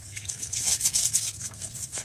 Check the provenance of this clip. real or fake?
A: fake